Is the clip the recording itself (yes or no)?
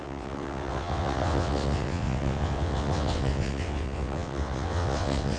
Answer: no